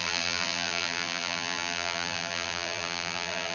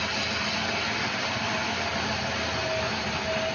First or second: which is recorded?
second